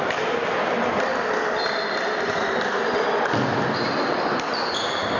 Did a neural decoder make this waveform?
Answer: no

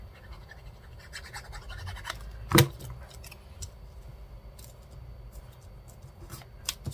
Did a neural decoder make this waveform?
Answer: no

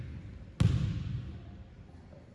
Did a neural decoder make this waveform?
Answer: no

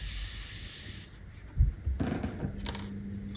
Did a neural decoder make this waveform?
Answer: no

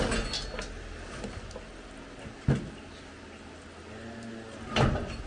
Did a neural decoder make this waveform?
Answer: no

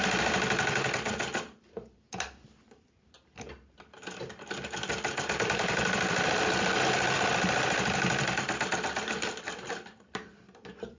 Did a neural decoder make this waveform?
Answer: yes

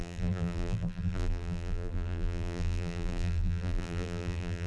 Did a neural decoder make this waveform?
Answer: yes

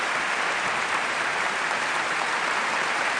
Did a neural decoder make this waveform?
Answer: yes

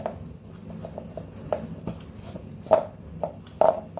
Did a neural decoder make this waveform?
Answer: no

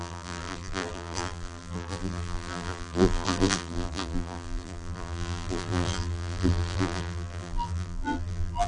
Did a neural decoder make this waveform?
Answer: yes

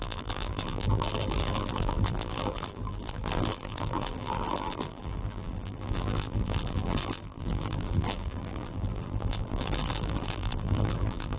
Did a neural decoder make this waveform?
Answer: yes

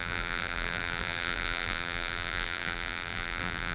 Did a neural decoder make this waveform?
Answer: yes